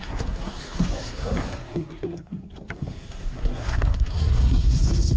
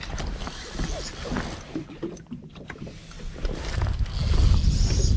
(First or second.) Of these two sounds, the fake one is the first